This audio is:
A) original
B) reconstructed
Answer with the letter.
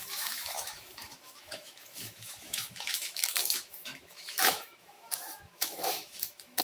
B